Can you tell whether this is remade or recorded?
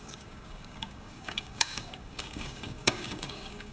remade